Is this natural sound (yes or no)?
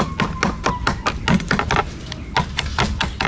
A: yes